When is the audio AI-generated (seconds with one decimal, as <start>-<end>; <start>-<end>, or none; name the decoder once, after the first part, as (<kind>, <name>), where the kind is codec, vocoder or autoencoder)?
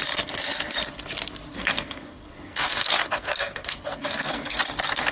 1.5-4.6 (codec, SNAC)